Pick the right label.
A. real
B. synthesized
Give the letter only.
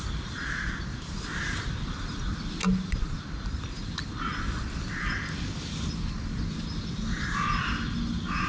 A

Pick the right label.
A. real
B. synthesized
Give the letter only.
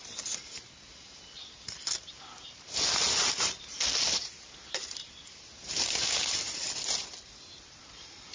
A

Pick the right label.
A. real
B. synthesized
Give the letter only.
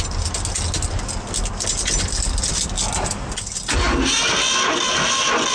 A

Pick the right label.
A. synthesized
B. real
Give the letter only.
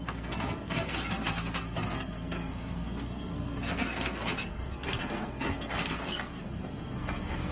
A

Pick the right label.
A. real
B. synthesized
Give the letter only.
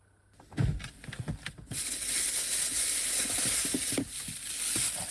A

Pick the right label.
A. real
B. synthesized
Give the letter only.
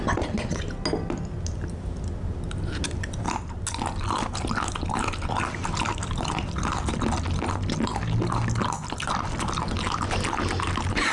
A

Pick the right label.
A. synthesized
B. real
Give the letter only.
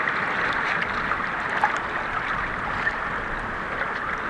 B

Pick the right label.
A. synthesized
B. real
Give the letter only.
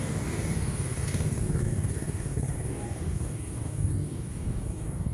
A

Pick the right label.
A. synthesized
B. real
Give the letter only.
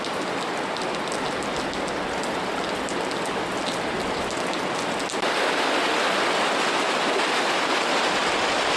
B